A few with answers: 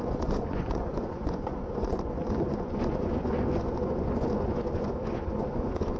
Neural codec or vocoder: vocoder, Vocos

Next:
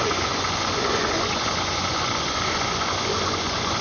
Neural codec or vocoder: vocoder, Vocos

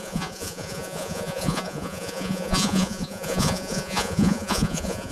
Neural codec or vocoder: vocoder, Vocos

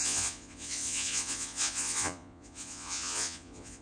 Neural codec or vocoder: vocoder, Vocos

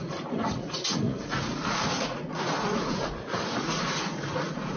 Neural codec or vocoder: vocoder, Vocos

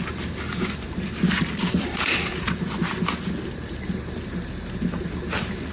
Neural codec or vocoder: none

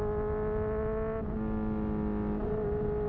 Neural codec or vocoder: none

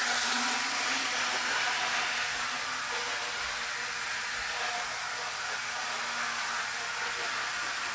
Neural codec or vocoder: none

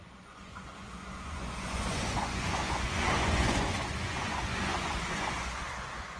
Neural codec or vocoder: vocoder, Vocos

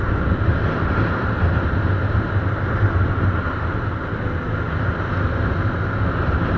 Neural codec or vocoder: none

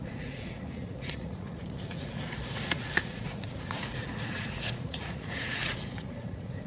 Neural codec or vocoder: vocoder, Vocos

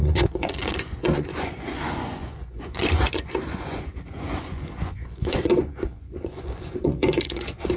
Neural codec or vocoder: vocoder, Vocos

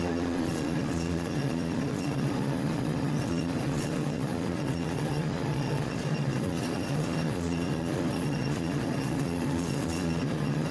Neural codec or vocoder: vocoder, Vocos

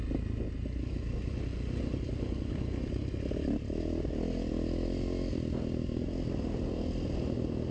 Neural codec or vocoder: none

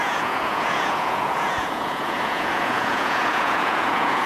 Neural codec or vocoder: vocoder, Vocos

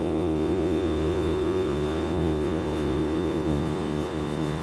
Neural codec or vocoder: vocoder, Vocos